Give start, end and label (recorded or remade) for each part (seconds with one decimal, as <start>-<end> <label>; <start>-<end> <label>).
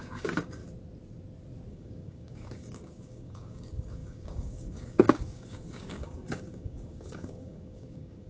0.0-0.6 remade; 0.6-1.7 recorded; 1.7-8.3 remade